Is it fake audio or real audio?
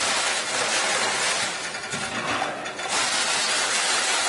real